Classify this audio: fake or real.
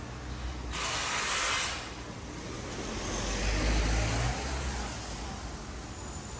real